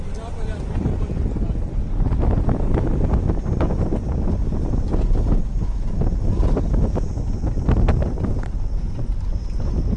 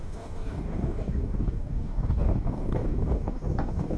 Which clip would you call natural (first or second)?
first